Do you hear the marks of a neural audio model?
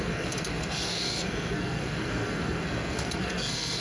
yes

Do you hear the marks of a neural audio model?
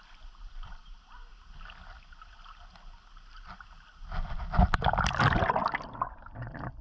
no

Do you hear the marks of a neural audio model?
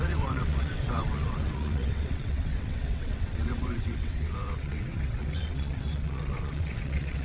yes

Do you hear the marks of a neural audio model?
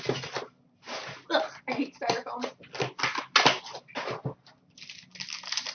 no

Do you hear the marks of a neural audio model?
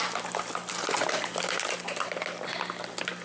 no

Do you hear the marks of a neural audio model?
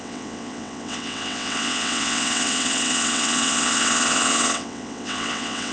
yes